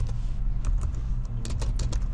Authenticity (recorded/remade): recorded